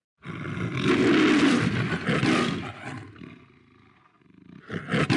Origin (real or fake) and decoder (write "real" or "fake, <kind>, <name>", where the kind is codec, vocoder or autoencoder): real